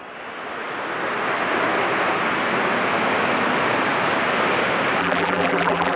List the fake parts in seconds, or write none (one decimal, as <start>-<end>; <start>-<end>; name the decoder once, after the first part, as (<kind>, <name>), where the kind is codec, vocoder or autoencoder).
5.0-6.0 (vocoder, BigVGAN v2)